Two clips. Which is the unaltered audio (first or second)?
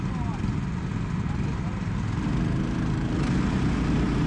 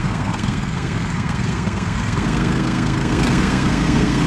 first